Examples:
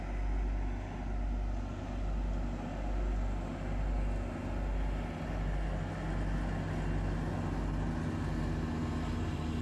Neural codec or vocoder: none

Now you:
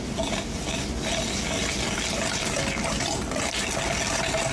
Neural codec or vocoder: none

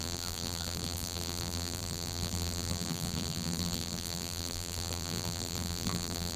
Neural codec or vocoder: vocoder, BigVGAN v2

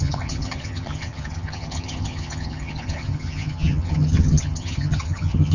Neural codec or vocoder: vocoder, HiFi-GAN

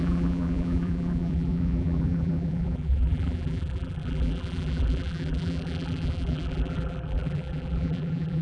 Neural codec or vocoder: vocoder, BigVGAN v2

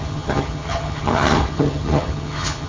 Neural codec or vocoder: vocoder, HiFi-GAN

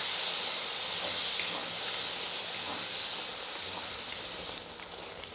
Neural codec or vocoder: none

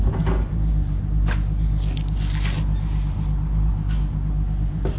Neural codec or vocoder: none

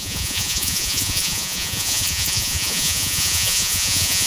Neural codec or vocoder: vocoder, Vocos